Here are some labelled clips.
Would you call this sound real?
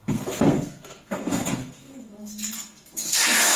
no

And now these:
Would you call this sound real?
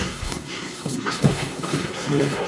no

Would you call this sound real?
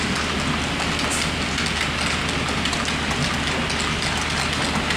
yes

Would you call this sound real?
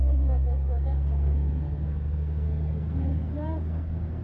no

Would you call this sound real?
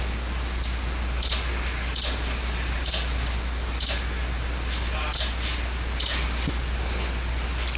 yes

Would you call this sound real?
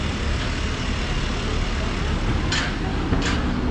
yes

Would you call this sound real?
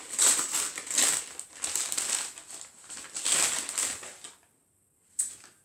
yes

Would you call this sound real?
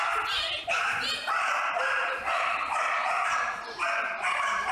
yes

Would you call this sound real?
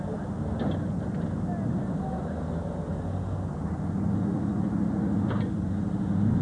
yes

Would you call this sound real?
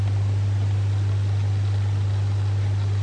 yes